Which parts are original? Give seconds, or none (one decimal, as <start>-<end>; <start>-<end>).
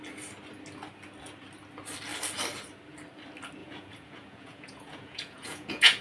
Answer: 0.0-3.6